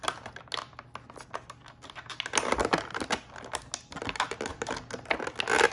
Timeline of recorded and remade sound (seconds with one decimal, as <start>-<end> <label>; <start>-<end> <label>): 0.0-5.7 recorded